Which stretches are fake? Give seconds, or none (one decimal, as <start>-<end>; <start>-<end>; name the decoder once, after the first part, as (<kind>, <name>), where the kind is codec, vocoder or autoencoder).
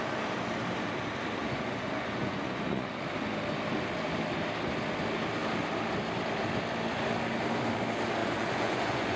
1.4-3.0 (vocoder, Vocos); 8.2-9.2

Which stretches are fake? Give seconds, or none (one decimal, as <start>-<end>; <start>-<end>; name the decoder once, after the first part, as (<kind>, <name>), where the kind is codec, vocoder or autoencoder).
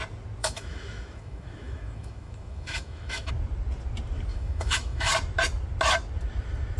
0.4-3.3 (autoencoder, DAC-VAE); 4.3-5.1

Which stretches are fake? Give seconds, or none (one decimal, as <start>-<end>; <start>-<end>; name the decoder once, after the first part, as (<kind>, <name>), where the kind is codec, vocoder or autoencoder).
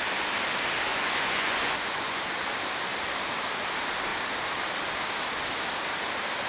0.9-2.2 (vocoder, Vocos)